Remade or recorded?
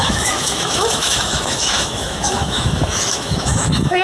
remade